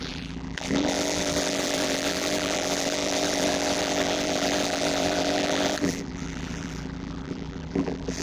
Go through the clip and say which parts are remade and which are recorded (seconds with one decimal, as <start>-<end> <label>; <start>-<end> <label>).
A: 0.0-8.2 remade